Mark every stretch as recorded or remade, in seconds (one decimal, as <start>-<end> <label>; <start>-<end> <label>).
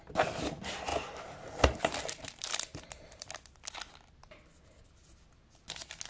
0.0-0.9 recorded; 0.9-3.3 remade; 3.3-6.1 recorded